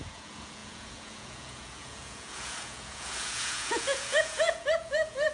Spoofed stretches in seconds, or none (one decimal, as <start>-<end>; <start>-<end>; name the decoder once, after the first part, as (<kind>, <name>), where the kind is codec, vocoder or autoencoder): 0.0-5.3 (vocoder, Vocos)